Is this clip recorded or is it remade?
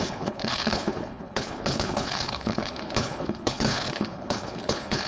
remade